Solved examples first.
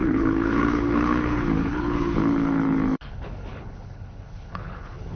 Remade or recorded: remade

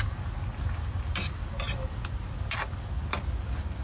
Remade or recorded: recorded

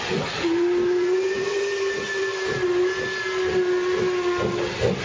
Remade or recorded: recorded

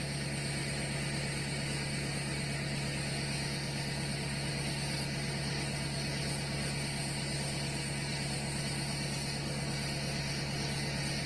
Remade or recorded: recorded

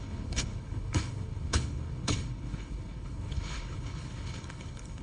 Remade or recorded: remade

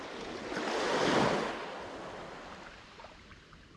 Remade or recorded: recorded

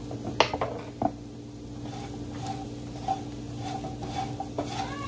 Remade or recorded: recorded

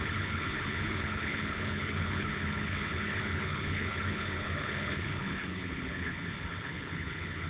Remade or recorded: remade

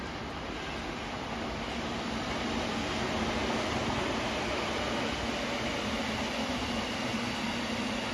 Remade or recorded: recorded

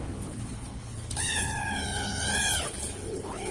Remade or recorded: remade